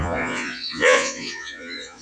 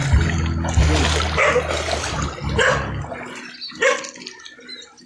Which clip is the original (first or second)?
second